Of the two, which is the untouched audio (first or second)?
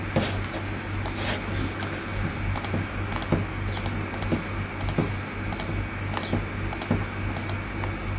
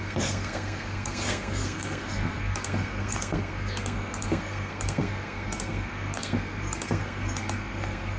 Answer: first